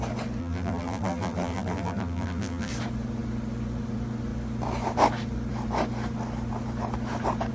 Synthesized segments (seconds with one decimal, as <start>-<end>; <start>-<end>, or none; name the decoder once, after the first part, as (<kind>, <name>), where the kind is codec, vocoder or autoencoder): 0.4-2.7 (vocoder, BigVGAN v2)